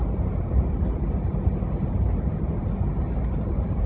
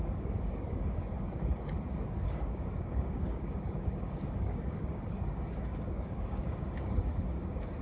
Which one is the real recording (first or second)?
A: first